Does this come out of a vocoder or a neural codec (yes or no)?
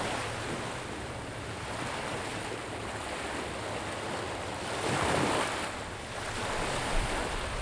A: no